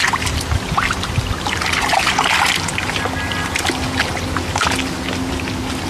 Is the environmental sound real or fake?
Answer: real